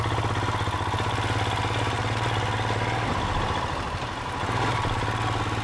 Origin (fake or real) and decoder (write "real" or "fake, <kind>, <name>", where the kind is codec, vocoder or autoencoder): real